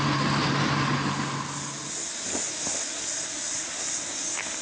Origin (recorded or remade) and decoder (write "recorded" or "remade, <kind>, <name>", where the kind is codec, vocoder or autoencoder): recorded